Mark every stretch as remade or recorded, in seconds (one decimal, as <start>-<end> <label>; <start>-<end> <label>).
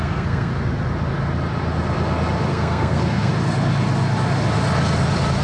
0.0-0.5 remade; 0.5-2.5 recorded; 2.5-3.3 remade; 3.3-5.4 recorded